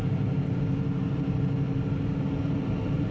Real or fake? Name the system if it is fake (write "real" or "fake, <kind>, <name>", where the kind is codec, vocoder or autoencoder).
real